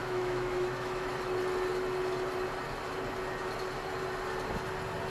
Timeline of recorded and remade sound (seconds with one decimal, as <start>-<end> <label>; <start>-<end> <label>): 0.0-1.1 remade; 1.1-5.1 recorded